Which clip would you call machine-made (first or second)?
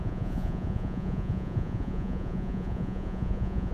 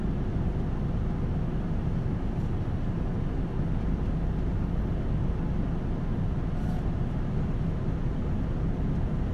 first